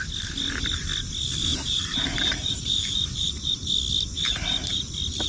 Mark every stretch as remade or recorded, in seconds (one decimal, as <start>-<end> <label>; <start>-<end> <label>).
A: 0.0-1.5 recorded; 1.5-3.7 remade; 3.7-4.2 recorded; 4.2-4.8 remade; 4.8-5.3 recorded